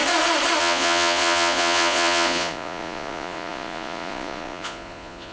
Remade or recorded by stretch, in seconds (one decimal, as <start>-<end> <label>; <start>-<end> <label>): 0.0-0.6 recorded; 0.6-5.3 remade